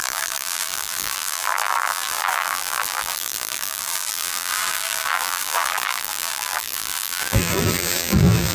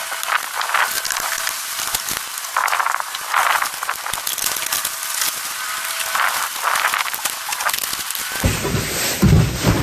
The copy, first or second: first